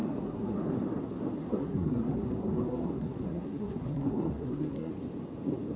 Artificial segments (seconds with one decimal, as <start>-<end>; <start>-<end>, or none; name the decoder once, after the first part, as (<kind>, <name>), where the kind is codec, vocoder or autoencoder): 0.0-0.7 (codec, SNAC); 1.4-4.9